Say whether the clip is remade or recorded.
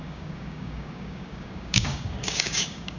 remade